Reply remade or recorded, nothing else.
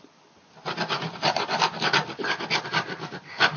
recorded